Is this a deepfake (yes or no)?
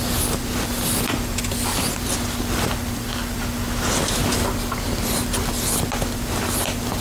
no